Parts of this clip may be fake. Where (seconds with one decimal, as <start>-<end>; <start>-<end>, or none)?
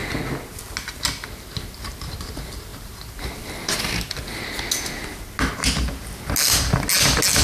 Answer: none